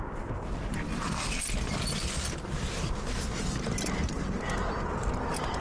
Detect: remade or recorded recorded